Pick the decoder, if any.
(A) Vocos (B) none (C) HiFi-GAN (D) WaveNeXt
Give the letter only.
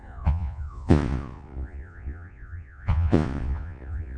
A